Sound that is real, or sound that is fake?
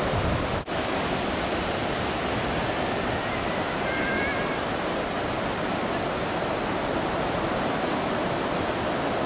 real